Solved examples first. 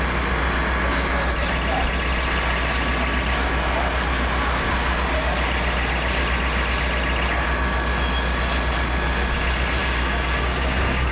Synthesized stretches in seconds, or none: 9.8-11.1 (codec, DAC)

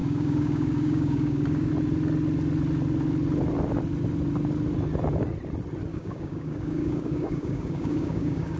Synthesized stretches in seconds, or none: 0.0-1.7 (codec, DAC); 5.9-8.6

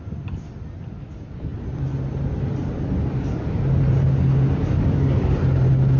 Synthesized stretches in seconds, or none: 4.6-5.4 (codec, DAC)

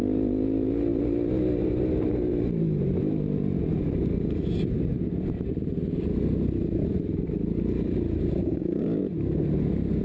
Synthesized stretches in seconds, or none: 8.4-9.0 (codec, DAC)

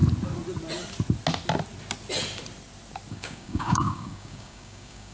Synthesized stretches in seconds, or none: 3.1-5.1 (codec, DAC)

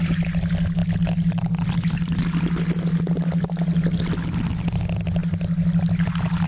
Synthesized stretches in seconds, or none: none

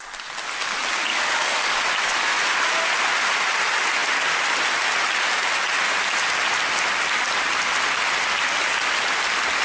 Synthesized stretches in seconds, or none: 1.1-1.8 (codec, DAC)

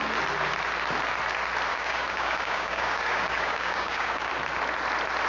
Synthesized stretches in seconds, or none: 1.7-4.3 (codec, DAC)